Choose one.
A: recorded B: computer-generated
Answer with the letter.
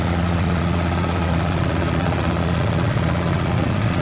B